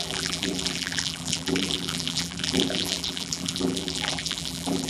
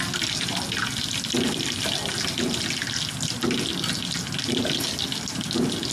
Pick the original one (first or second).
second